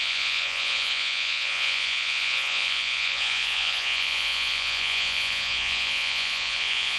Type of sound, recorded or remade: remade